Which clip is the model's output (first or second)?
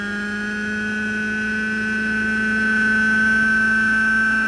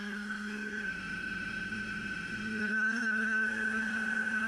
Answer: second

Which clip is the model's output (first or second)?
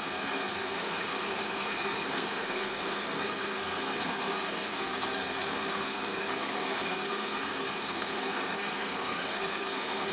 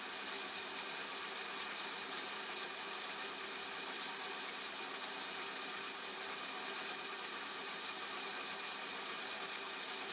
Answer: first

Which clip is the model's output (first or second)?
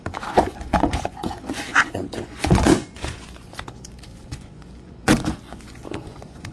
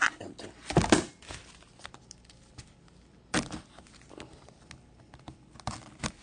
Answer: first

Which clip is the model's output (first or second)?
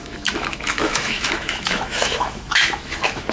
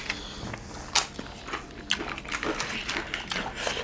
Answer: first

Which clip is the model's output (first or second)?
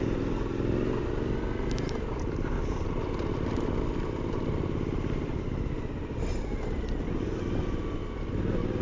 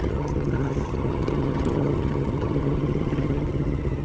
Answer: second